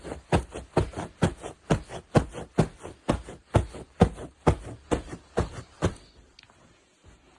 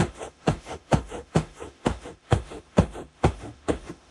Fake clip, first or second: second